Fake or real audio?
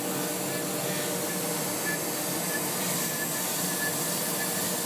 real